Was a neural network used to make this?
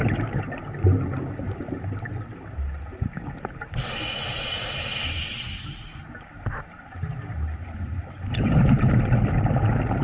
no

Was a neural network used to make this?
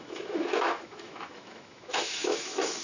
yes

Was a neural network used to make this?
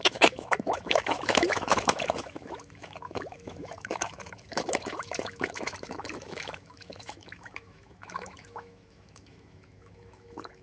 yes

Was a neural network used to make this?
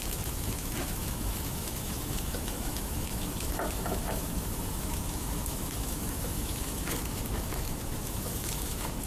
yes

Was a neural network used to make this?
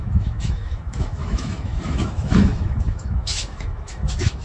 yes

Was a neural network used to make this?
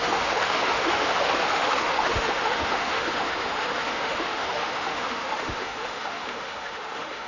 yes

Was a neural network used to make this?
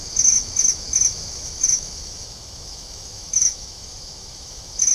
yes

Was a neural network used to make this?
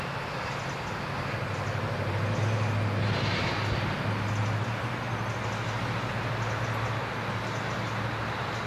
no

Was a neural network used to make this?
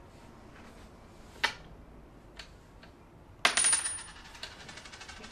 no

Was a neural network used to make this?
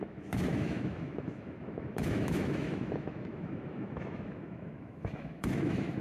yes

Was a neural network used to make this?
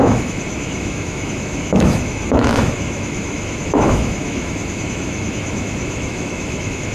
yes